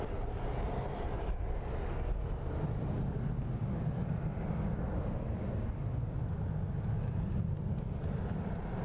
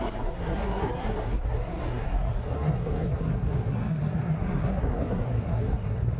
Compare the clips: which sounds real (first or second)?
first